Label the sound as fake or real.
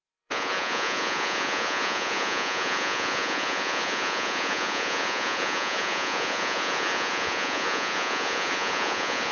fake